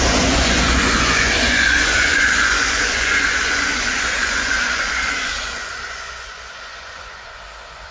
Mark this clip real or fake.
fake